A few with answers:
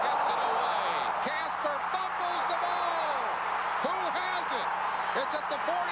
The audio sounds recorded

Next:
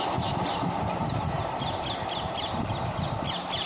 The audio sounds recorded